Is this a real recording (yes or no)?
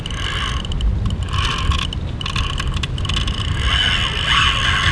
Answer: yes